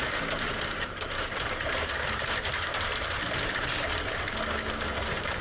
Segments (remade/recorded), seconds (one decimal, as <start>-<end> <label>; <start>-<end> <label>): 0.0-0.5 recorded; 0.5-3.7 remade; 3.7-5.4 recorded